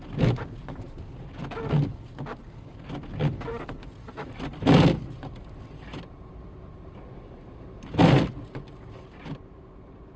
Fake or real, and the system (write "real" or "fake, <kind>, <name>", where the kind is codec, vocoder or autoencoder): real